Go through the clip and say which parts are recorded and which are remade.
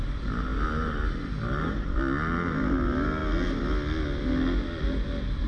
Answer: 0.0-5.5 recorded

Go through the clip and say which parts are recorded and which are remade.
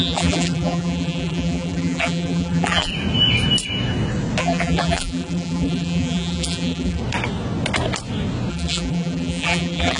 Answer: 0.0-2.9 remade; 2.9-4.4 recorded; 4.4-7.0 remade; 7.0-8.5 recorded; 8.5-10.0 remade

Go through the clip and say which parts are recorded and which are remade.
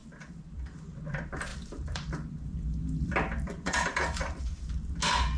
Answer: 0.0-1.0 remade; 1.0-1.5 recorded; 1.5-4.7 remade; 4.7-5.4 recorded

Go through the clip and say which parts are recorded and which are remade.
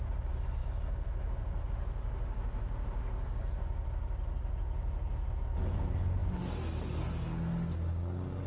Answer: 0.0-8.5 recorded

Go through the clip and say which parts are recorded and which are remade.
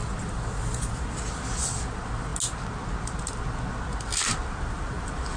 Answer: 0.0-2.3 remade; 2.3-4.6 recorded; 4.6-5.4 remade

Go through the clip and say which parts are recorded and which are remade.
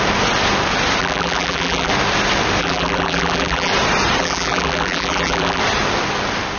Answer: 0.0-1.0 recorded; 1.0-1.9 remade; 1.9-2.6 recorded; 2.6-3.7 remade; 3.7-4.2 recorded; 4.2-5.6 remade; 5.6-6.6 recorded